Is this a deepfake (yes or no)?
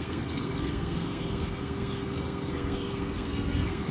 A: yes